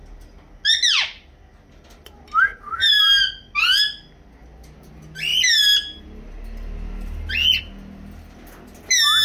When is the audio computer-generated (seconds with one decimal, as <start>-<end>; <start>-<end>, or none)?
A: none